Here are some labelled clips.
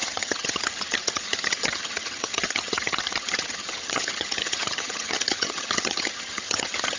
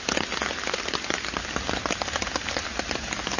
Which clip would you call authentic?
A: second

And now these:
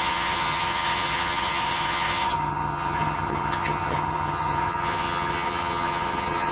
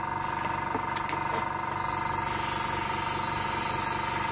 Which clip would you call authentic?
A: second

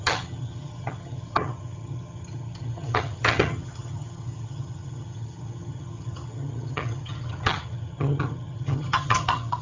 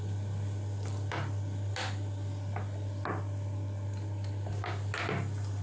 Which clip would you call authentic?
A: second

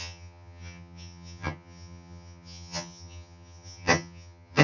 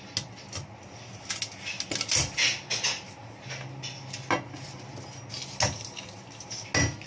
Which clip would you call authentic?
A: second